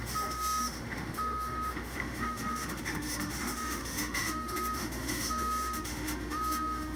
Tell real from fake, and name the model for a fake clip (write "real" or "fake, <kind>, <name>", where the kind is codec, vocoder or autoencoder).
fake, autoencoder, DAC-VAE